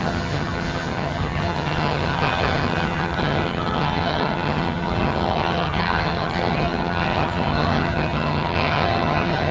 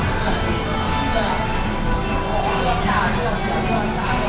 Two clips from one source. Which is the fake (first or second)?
first